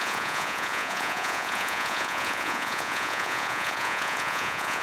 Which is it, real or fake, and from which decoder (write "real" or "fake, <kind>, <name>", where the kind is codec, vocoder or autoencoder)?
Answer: fake, vocoder, Vocos